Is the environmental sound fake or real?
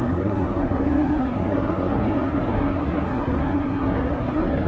fake